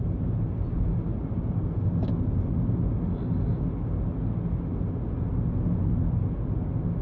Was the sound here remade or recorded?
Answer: recorded